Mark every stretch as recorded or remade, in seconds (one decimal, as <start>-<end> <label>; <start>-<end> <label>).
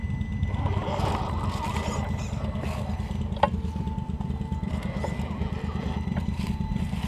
0.0-7.1 recorded